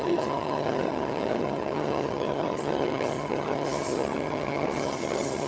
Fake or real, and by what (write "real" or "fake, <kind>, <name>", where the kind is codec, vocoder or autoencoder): fake, vocoder, HiFi-GAN